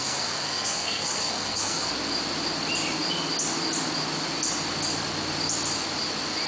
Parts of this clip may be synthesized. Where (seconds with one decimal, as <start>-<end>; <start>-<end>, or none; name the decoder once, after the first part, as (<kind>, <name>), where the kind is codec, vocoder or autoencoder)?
0.0-1.9 (codec, SNAC)